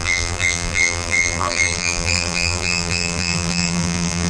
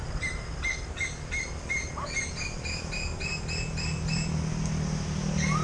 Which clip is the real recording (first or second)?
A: second